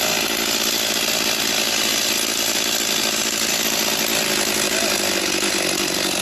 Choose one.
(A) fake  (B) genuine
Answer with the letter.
B